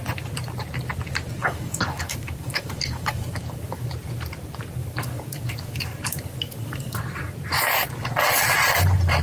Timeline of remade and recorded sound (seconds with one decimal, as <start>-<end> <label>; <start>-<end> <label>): 0.0-1.4 recorded; 1.4-3.9 remade; 3.9-4.8 recorded; 4.8-7.0 remade; 7.0-9.2 recorded